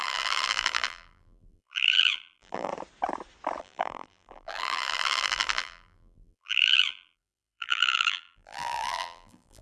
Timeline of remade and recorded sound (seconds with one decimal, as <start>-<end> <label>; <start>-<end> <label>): 0.0-2.7 remade; 2.7-3.6 recorded; 3.6-9.6 remade